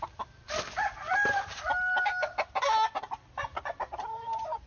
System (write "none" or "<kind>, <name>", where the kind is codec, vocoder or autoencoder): none